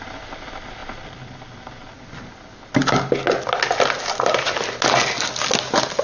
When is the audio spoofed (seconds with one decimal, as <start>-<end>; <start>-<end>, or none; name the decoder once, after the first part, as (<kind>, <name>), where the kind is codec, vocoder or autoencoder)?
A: none